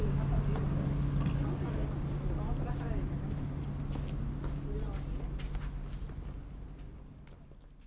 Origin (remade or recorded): recorded